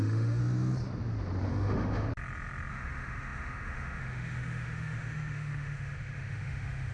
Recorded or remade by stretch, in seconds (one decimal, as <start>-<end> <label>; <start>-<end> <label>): 0.0-0.4 remade; 0.4-1.5 recorded; 1.5-2.1 remade; 2.1-2.7 recorded; 2.7-6.9 remade